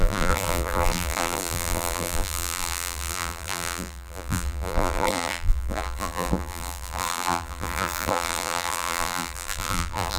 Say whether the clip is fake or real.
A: fake